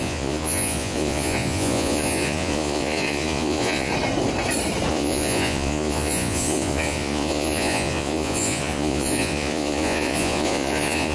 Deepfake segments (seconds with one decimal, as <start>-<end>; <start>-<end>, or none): 0.0-3.9; 4.9-11.1